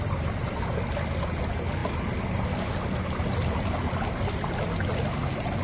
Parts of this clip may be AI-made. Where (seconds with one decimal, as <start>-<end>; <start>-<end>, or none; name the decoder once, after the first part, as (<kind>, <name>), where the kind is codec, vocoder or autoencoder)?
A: none